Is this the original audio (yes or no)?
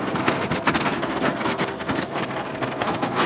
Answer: no